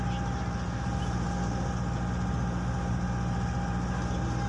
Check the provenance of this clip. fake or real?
real